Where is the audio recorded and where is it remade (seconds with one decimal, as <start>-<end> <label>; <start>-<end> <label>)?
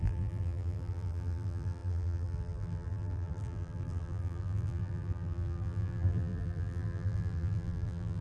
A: 0.0-8.2 remade